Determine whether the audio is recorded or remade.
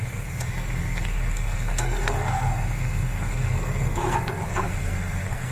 remade